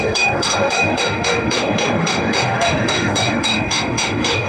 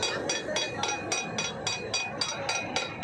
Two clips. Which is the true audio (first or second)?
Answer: second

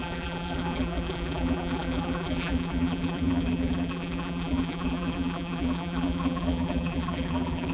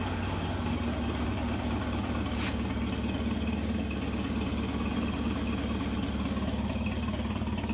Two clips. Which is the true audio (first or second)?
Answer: second